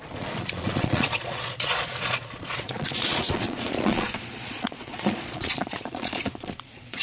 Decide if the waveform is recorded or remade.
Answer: remade